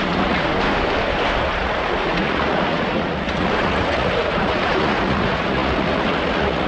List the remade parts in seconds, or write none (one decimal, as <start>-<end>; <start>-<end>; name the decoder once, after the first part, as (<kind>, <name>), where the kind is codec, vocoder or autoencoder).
0.0-0.5 (vocoder, Vocos); 1.4-6.7